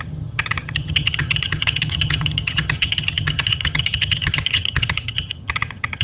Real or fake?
fake